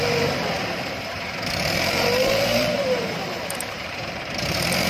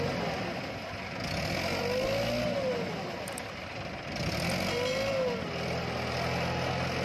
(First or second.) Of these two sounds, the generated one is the first